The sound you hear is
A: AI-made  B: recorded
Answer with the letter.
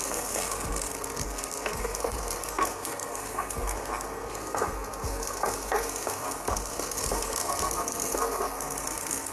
A